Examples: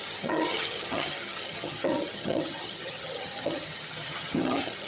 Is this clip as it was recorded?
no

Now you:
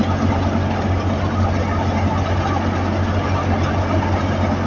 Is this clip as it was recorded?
yes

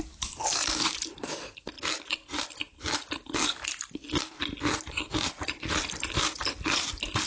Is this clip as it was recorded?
yes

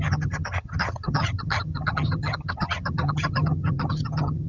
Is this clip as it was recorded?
no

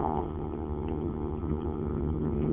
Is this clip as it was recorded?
no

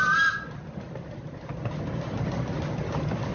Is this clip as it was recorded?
yes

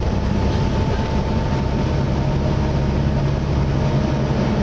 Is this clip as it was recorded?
yes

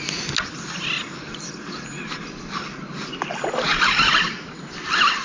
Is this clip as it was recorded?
yes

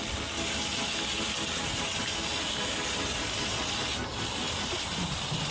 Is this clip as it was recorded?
yes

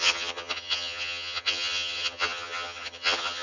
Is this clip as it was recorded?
no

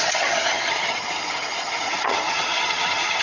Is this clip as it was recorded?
no